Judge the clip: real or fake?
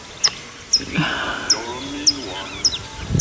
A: real